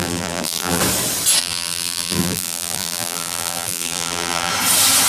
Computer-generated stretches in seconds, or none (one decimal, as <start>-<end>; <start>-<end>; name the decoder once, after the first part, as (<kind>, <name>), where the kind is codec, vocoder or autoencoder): 0.0-0.8 (vocoder, BigVGAN v2); 1.4-4.5